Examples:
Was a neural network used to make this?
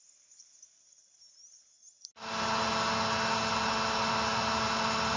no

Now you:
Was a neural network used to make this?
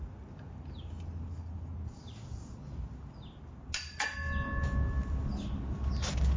no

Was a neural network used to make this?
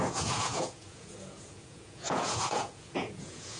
yes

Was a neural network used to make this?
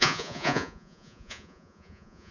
yes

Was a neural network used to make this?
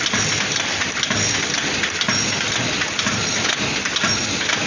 no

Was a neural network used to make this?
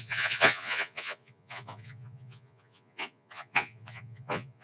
yes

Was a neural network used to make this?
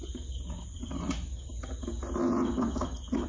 no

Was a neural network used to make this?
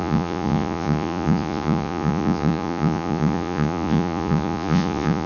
yes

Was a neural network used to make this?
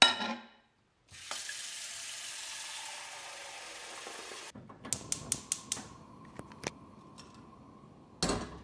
no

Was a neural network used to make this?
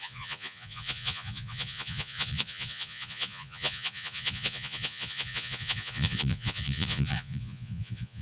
yes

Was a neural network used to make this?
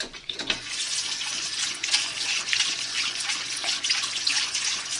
yes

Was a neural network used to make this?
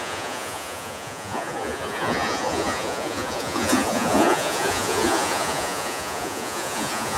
yes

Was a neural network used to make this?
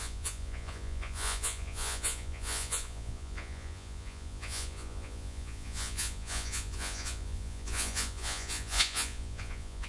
yes